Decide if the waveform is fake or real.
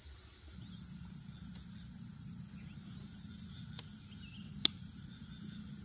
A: real